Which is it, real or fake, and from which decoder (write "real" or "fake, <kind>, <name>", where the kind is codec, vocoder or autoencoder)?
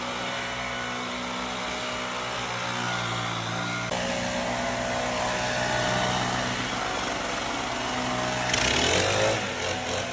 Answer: real